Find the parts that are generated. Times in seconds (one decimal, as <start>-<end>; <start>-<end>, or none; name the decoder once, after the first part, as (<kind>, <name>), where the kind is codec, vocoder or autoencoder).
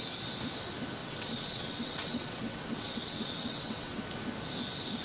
1.0-4.0 (vocoder, WaveNeXt)